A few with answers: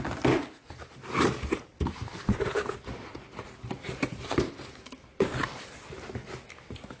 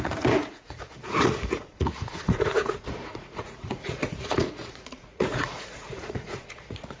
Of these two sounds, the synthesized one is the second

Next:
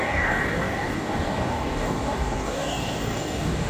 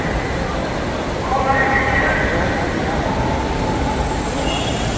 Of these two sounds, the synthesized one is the first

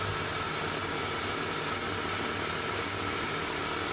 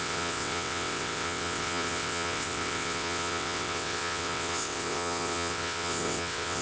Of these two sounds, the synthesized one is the second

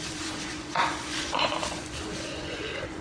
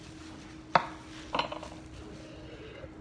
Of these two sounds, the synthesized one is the first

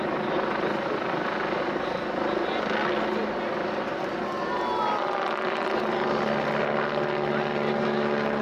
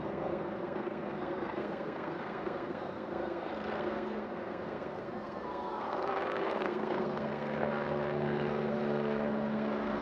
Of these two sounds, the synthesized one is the second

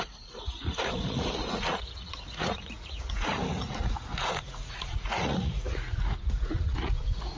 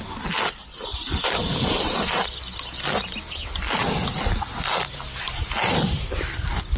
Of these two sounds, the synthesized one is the first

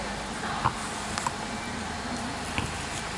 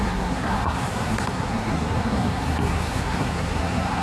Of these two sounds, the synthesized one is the second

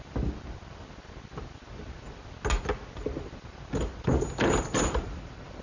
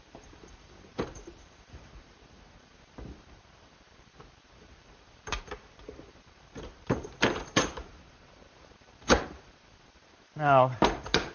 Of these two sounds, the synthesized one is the second